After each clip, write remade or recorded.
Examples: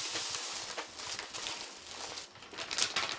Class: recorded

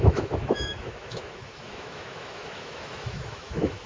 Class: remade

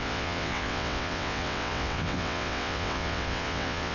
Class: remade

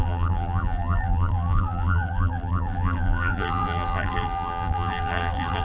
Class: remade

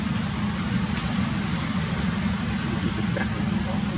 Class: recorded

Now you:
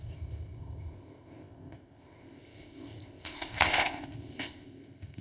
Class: remade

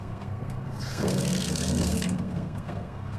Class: remade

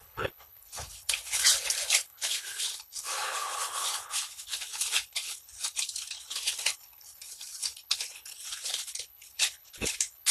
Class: remade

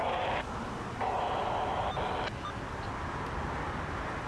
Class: recorded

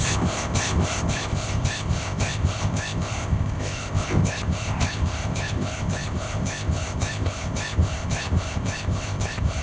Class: remade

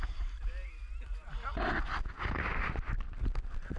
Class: recorded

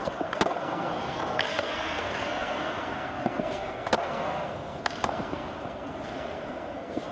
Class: remade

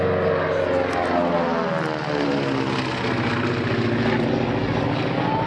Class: recorded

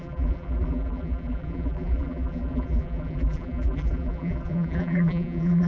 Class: remade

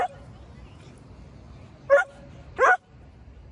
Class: recorded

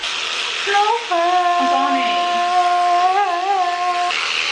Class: recorded